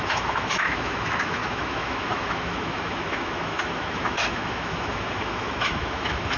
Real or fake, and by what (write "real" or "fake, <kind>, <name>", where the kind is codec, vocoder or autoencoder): fake, autoencoder, DAC-VAE